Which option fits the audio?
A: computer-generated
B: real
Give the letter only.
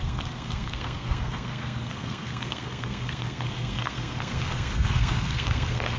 A